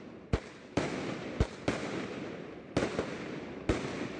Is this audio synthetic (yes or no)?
no